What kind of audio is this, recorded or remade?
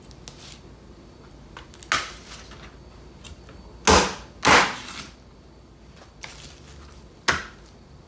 recorded